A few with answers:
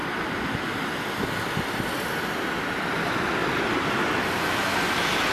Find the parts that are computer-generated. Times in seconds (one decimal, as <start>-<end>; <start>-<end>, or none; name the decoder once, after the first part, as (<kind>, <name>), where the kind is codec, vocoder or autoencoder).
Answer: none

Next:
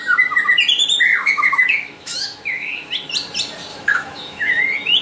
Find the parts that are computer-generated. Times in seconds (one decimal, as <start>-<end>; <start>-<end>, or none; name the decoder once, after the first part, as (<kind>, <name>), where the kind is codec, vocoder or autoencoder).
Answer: 1.2-2.9 (autoencoder, DAC-VAE); 3.7-4.6

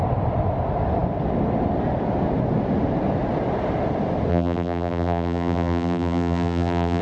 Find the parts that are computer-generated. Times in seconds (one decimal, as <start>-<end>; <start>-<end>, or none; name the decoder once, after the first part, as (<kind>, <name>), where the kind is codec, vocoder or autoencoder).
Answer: 4.3-7.0 (vocoder, BigVGAN v2)

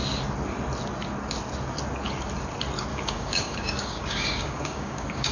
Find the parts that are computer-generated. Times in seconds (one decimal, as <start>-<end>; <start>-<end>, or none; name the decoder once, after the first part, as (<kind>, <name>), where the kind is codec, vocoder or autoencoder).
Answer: 2.9-5.3 (codec, DAC)